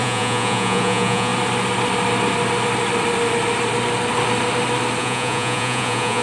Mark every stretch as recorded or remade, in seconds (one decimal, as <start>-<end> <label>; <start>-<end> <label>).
0.0-1.3 remade; 1.3-5.0 recorded; 5.0-6.2 remade